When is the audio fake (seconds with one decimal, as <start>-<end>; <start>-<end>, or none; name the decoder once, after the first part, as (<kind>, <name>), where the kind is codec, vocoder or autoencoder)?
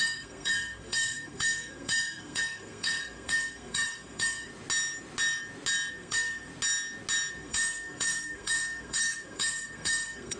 0.0-4.5 (codec, SNAC); 5.9-6.5; 7.3-10.4